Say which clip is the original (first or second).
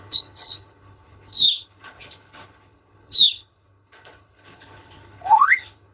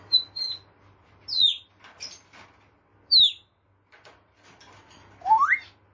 second